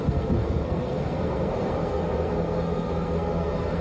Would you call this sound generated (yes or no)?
yes